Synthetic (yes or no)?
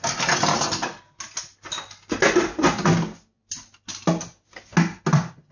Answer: no